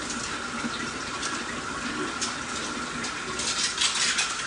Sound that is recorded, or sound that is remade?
recorded